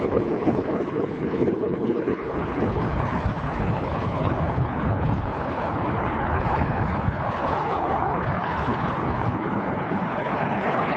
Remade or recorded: remade